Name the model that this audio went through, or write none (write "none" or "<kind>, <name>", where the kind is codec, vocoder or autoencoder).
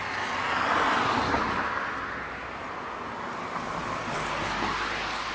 none